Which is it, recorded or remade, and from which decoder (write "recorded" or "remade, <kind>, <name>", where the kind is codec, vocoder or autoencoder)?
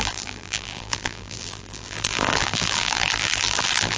remade, vocoder, BigVGAN v2